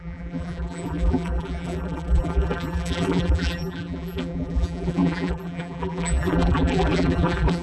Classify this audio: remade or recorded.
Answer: remade